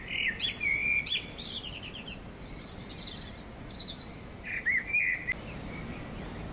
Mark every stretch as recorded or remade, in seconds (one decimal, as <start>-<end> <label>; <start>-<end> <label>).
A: 0.0-3.8 recorded; 3.8-5.0 remade; 5.0-6.5 recorded